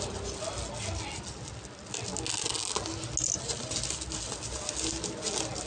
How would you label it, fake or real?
real